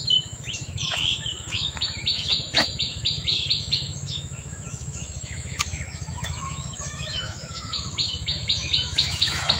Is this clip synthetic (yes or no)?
yes